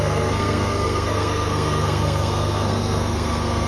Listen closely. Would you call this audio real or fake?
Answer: fake